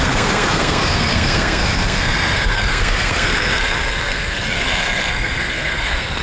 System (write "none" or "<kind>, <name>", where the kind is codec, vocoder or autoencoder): codec, SNAC